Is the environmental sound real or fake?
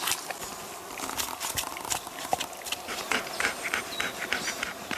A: real